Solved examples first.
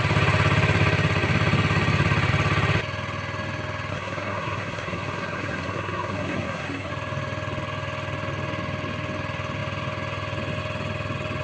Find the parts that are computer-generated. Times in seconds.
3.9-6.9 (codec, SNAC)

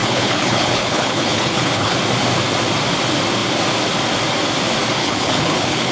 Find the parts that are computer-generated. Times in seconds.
0.0-2.0 (codec, HILCodec); 5.0-5.9

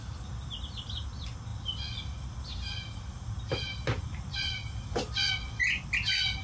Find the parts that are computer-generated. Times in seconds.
none

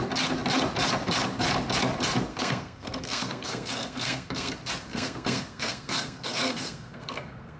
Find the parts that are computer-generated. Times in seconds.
2.3-4.5 (codec, SNAC); 4.9-7.6